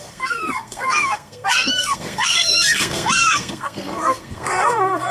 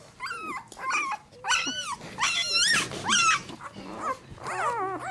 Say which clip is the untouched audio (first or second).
second